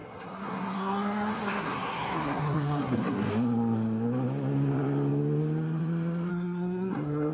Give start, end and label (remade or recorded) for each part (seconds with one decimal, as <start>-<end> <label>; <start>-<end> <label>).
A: 0.0-3.3 remade; 3.3-6.3 recorded; 6.3-7.3 remade